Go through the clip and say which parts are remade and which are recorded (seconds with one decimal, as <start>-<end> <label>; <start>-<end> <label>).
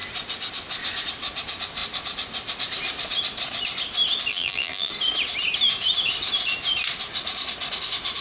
0.0-4.3 recorded; 4.3-4.9 remade; 4.9-8.2 recorded